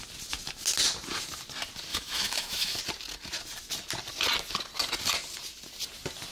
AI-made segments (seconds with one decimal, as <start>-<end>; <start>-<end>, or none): 1.9-2.8